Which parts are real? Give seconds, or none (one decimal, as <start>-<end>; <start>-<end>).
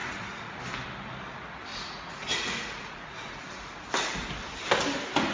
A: 0.6-1.7; 3.4-5.3